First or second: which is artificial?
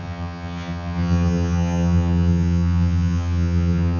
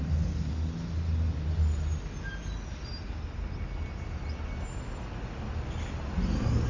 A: first